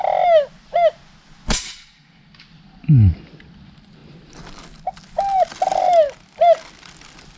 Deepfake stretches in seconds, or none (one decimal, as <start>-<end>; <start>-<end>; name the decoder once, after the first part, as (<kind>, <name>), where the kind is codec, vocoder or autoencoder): none